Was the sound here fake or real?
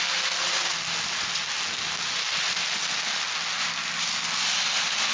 real